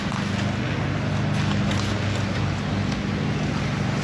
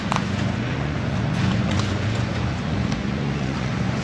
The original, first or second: first